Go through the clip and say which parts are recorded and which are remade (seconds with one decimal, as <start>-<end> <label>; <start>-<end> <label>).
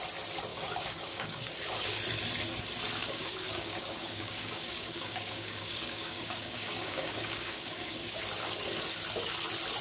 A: 0.0-0.5 recorded; 0.5-1.5 remade; 1.5-3.0 recorded; 3.0-8.2 remade; 8.2-9.8 recorded